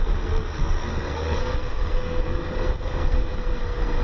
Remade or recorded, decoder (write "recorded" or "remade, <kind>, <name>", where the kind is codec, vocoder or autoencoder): remade, codec, SNAC